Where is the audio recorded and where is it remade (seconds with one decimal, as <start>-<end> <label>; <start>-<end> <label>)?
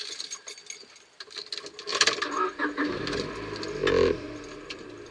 0.0-5.1 recorded